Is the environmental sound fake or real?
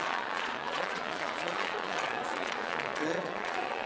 fake